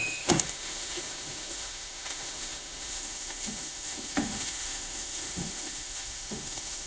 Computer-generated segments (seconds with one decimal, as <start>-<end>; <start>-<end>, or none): 0.0-6.9